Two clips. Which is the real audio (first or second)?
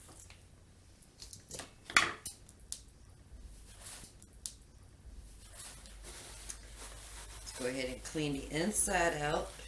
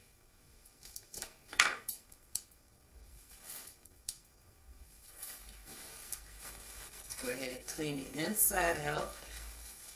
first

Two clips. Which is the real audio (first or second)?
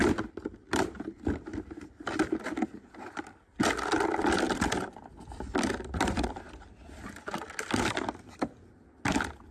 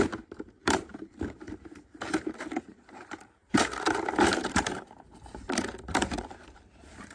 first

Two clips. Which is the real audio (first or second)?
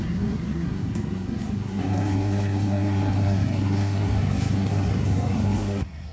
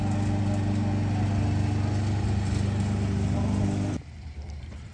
second